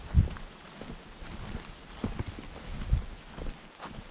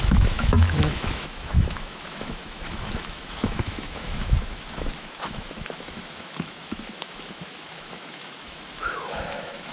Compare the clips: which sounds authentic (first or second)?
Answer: first